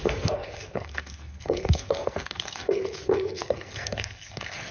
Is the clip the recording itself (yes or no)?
no